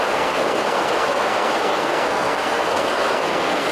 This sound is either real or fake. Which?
fake